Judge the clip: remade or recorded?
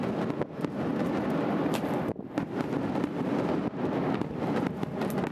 recorded